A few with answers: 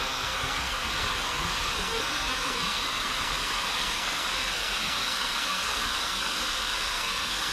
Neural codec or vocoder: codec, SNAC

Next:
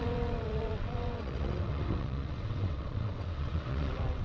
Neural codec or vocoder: vocoder, WaveNeXt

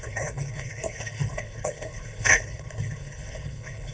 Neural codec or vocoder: codec, HILCodec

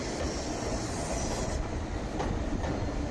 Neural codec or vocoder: none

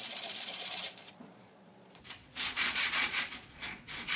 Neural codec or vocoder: vocoder, Vocos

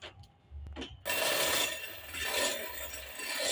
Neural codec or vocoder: none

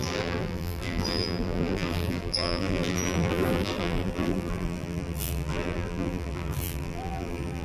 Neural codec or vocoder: vocoder, BigVGAN v2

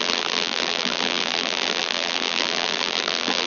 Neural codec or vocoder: vocoder, BigVGAN v2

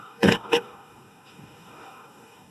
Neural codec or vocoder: codec, DAC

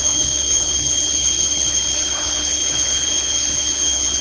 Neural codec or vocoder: codec, HILCodec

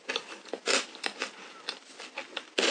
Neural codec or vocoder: none